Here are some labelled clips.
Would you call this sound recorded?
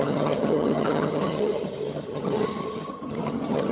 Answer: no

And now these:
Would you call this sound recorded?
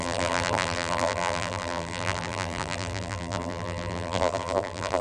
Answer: no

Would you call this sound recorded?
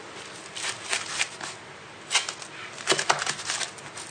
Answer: yes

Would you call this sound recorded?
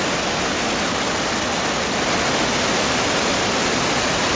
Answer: yes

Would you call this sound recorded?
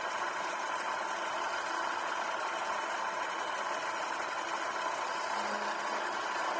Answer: yes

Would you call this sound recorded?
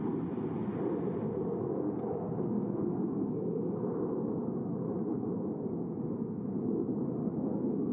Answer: yes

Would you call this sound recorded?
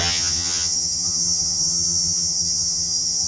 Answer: no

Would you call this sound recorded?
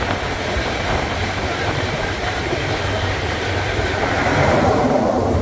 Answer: no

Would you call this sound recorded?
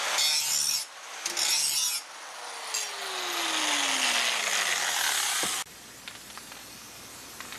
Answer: yes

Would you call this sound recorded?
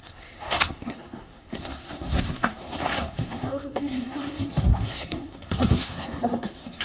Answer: no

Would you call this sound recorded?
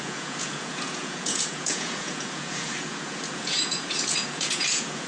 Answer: no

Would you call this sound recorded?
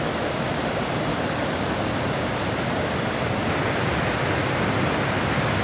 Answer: yes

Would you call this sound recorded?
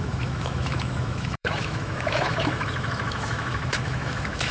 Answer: no